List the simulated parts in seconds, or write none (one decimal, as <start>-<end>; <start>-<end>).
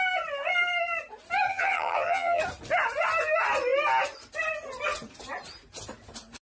1.5-2.4